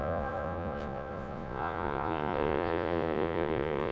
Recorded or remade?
remade